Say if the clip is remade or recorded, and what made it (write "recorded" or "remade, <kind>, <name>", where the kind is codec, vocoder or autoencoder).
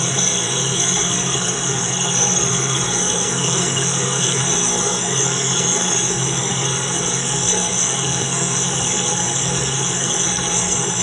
remade, codec, SNAC